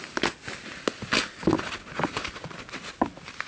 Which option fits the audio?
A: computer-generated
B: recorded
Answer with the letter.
B